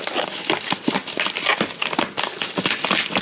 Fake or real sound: real